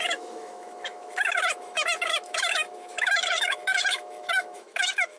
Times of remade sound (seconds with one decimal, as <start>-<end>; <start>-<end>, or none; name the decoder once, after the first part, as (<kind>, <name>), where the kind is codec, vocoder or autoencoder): 0.0-5.2 (autoencoder, DAC-VAE)